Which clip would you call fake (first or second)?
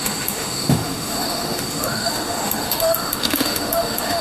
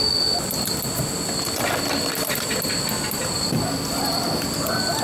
first